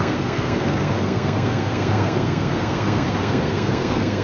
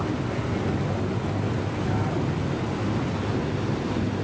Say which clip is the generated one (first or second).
first